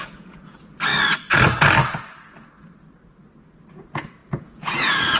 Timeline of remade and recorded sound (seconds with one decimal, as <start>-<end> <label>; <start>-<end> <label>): 0.0-0.9 remade; 0.9-3.7 recorded; 3.7-5.2 remade